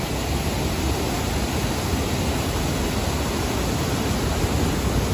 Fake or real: real